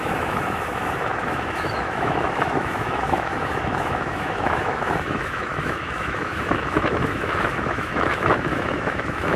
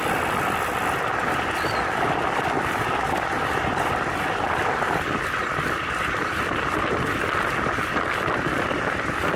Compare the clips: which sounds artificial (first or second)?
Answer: first